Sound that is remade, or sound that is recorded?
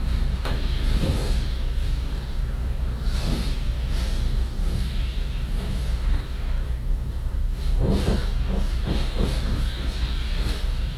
remade